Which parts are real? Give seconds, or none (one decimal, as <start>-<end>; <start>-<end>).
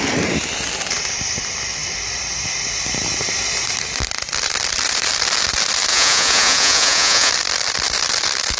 0.0-5.9; 7.3-8.6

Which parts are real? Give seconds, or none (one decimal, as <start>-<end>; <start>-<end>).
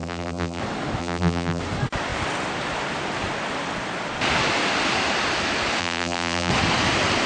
0.6-1.0; 1.6-5.8; 6.5-7.3